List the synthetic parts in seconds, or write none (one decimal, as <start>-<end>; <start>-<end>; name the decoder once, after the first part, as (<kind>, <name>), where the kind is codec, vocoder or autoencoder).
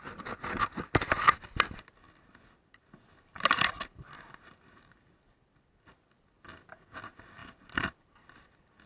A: 3.1-5.9 (vocoder, BigVGAN v2); 7.4-8.9